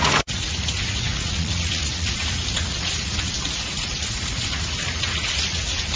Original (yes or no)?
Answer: no